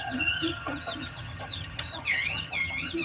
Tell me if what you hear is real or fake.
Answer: fake